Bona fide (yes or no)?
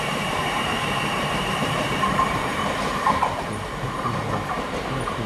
no